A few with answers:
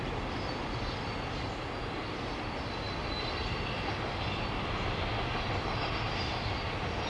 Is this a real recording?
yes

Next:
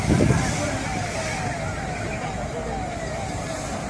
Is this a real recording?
yes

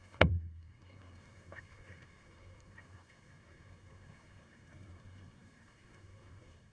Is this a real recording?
no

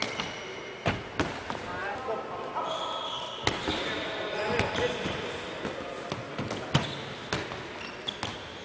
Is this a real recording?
yes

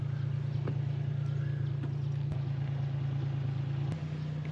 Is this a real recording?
yes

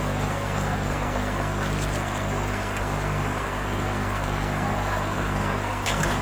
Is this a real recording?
no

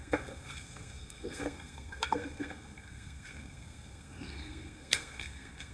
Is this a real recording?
no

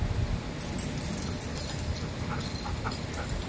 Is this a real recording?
yes